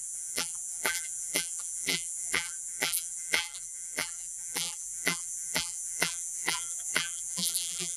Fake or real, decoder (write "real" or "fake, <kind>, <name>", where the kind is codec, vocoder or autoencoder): fake, vocoder, BigVGAN v2